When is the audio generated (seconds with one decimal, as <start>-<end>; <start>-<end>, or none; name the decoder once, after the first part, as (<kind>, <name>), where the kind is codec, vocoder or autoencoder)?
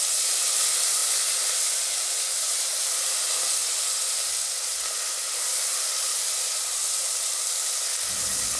none